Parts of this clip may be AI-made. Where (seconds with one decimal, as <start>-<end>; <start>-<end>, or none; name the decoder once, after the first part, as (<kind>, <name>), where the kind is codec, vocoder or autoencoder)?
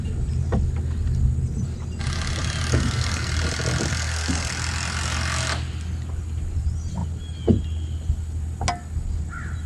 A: 2.7-3.3 (codec, SNAC); 3.9-4.5